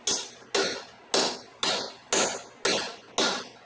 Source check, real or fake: real